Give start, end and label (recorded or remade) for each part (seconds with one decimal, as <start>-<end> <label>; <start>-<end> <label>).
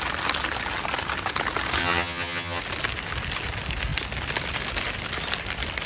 0.0-1.8 recorded; 1.8-2.6 remade; 2.6-5.9 recorded